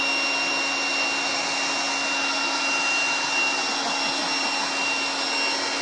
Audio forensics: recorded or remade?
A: recorded